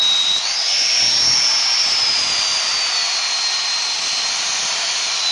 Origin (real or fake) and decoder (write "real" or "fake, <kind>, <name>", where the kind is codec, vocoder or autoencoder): real